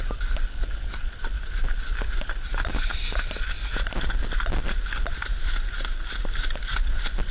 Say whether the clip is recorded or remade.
recorded